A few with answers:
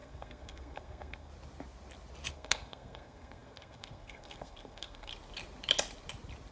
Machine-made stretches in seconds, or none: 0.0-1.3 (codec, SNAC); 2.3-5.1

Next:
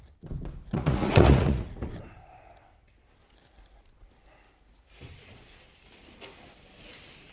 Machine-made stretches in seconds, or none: 0.6-1.9 (vocoder, Vocos)

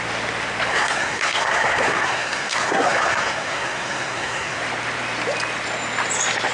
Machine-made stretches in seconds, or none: 0.7-4.6 (codec, SNAC)